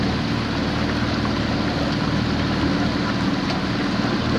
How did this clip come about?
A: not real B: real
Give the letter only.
B